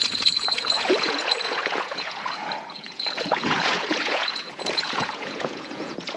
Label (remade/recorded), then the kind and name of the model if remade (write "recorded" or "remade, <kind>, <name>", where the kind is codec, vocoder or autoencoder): remade, vocoder, Vocos